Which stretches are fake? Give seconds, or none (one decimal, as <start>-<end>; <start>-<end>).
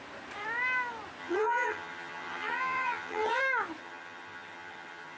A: 1.2-3.4; 3.8-5.2